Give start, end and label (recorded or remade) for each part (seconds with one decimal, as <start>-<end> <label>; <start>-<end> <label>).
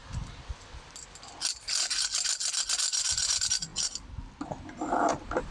0.0-5.5 recorded